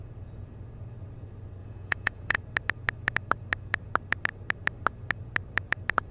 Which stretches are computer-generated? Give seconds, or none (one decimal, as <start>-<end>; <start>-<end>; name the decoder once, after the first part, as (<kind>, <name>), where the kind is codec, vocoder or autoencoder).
1.6-2.4 (vocoder, Vocos)